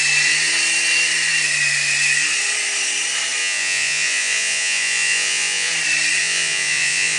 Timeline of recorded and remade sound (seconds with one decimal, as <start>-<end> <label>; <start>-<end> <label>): 0.0-3.4 recorded; 3.4-5.7 remade; 5.7-6.2 recorded; 6.2-7.2 remade